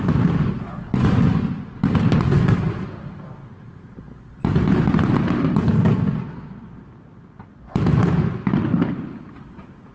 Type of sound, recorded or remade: recorded